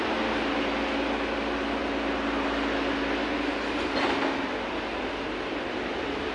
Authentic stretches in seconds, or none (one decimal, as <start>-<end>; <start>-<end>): 0.0-6.3